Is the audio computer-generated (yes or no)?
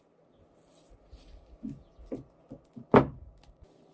no